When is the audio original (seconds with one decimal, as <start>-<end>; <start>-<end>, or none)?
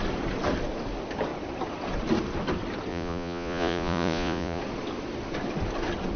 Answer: 0.0-2.9; 4.6-6.2